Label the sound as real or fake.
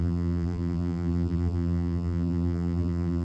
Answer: fake